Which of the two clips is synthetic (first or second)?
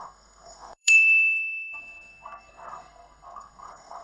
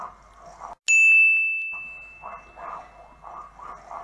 first